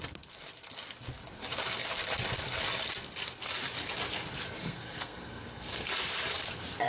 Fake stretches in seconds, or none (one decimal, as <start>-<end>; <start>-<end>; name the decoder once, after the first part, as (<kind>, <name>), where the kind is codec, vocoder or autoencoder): 4.6-5.9 (codec, SNAC)